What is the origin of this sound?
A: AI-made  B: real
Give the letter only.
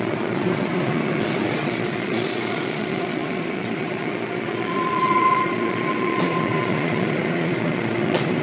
A